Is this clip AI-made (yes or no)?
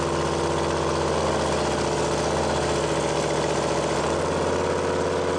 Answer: no